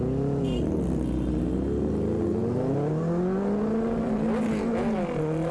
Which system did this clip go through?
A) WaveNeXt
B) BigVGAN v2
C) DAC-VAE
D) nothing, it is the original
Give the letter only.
D